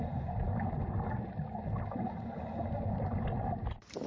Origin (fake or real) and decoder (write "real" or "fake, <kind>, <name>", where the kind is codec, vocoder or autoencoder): real